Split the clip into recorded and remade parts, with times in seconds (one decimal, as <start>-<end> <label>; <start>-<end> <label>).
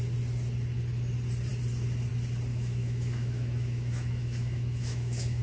0.0-2.5 recorded; 2.5-5.4 remade